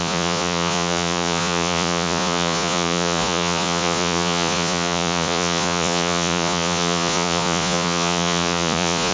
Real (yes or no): no